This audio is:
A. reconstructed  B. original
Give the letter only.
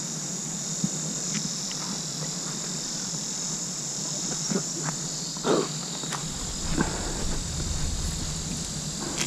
B